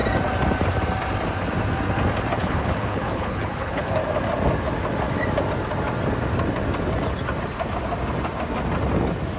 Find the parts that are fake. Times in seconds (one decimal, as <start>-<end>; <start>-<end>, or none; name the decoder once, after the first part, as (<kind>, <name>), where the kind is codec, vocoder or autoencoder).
2.3-4.0 (codec, HILCodec)